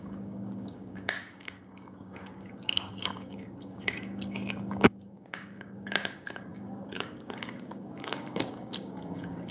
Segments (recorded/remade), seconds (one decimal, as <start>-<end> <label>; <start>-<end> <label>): 0.0-9.5 remade